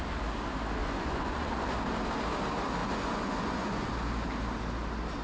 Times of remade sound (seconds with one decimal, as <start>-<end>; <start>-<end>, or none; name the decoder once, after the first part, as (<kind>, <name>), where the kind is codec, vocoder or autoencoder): 0.8-1.5 (vocoder, Vocos); 2.8-3.9